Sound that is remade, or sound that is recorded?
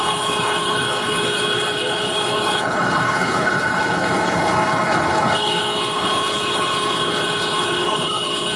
remade